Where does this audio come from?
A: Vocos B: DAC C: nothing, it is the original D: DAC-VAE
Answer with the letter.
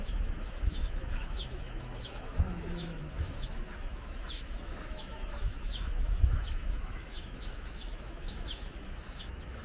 D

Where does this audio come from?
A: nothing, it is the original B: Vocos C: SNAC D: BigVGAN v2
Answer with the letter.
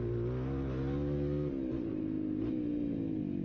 A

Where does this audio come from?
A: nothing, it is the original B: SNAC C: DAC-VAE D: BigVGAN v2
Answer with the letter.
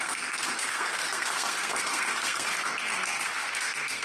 B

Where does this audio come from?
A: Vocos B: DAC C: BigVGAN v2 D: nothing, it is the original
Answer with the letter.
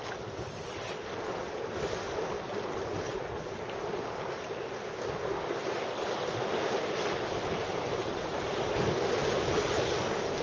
D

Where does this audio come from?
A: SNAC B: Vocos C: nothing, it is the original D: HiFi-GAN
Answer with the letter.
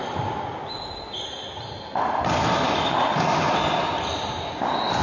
C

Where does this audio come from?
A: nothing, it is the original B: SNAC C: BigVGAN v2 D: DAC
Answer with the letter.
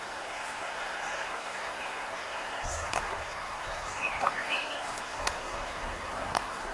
B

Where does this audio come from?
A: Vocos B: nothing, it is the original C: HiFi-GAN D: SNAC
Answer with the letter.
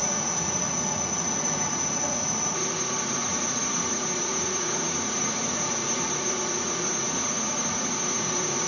A